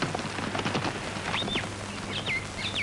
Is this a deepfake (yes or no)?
no